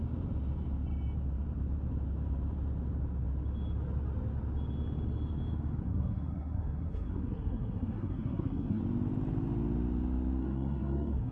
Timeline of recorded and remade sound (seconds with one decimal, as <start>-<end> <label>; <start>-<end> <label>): 0.0-5.8 recorded; 5.8-8.8 remade; 8.8-10.4 recorded; 10.4-11.3 remade